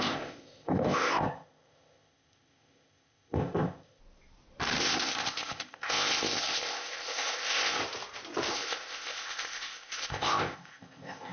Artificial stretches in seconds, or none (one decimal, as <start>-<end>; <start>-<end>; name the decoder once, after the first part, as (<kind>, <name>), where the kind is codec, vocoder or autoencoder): 0.0-4.0 (codec, ZipCodec); 4.8-7.8; 8.5-11.3

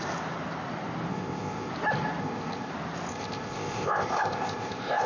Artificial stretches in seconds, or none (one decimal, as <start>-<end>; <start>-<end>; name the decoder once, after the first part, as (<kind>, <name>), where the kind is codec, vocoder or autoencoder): 1.1-1.7 (codec, ZipCodec); 2.2-2.7; 3.1-5.1

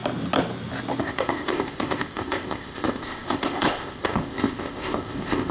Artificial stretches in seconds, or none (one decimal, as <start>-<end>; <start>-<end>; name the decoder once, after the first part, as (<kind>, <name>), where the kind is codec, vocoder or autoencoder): 1.0-5.5 (codec, ZipCodec)

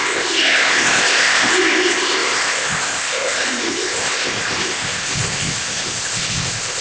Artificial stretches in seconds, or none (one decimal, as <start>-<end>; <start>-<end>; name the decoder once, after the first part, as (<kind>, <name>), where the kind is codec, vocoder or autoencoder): 0.0-6.8 (codec, ZipCodec)

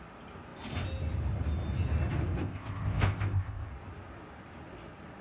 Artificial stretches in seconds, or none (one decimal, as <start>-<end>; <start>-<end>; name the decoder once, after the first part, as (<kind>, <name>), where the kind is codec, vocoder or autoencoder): 2.4-3.7 (codec, ZipCodec)

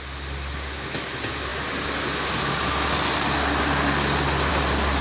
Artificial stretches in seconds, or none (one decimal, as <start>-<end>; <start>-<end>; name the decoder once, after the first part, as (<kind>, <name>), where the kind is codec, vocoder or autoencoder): none